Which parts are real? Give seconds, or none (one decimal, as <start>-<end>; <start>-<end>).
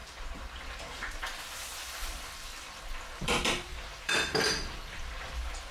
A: 0.0-1.6; 5.0-5.7